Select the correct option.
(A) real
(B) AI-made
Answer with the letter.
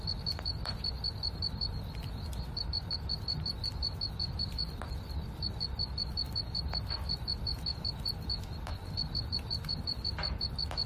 B